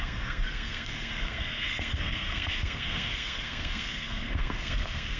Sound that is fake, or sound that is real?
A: fake